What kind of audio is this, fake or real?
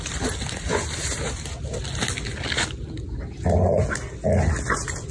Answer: real